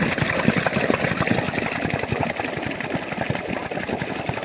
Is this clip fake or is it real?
real